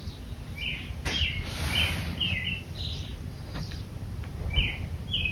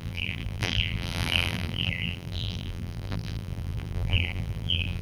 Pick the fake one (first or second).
second